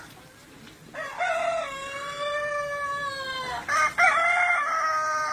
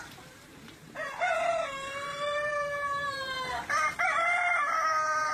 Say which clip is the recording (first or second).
first